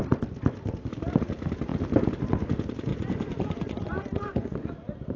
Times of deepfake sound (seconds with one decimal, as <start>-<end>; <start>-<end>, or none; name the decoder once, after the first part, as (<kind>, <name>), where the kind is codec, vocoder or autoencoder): 2.9-4.7 (vocoder, Vocos)